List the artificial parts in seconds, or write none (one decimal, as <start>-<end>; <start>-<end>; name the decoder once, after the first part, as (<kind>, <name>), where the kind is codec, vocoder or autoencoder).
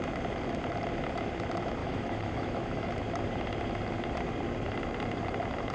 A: 1.8-2.9 (autoencoder, DAC-VAE)